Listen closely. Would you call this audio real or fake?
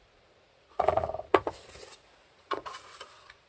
fake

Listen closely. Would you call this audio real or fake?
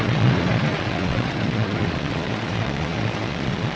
fake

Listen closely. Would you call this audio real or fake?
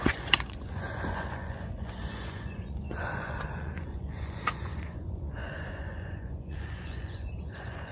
fake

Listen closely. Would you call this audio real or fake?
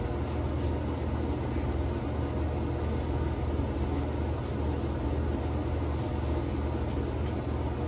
real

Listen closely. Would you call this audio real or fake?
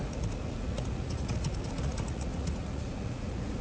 fake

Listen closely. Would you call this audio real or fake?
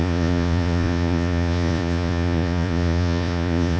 fake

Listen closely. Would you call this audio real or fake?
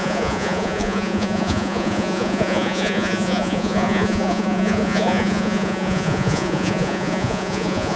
fake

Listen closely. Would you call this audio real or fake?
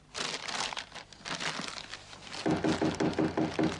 real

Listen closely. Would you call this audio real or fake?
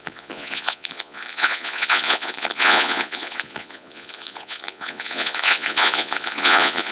fake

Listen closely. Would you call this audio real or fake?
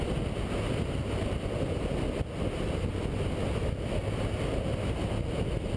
real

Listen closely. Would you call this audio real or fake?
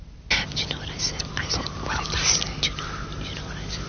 real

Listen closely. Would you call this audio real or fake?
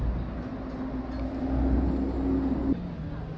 real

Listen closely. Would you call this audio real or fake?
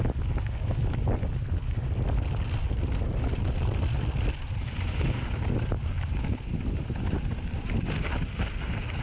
real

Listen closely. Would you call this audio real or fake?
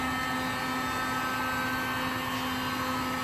real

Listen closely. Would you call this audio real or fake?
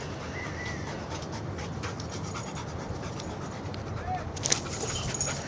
real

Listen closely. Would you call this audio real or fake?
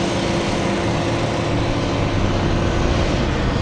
real